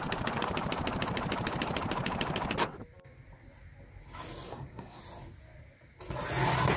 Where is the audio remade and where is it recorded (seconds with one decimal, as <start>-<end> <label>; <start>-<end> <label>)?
0.0-4.5 recorded; 4.5-5.0 remade; 5.0-6.8 recorded